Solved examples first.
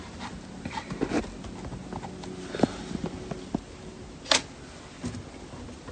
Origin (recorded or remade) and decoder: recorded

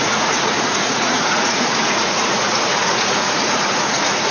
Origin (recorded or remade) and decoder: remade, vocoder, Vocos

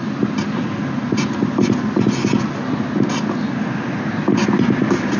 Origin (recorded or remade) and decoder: recorded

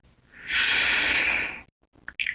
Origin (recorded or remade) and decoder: recorded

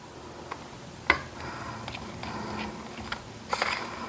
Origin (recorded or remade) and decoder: recorded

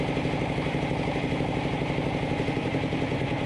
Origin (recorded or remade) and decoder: recorded